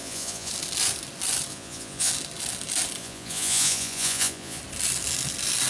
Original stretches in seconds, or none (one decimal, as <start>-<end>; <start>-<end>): 0.5-1.5; 2.1-3.0; 4.6-5.7